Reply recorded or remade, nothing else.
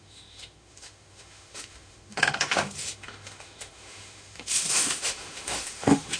remade